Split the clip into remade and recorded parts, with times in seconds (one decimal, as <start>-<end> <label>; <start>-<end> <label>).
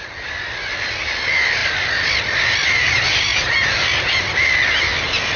0.0-5.4 recorded